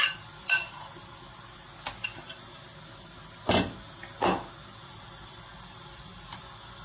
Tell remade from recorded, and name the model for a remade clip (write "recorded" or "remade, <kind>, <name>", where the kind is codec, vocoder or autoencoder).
recorded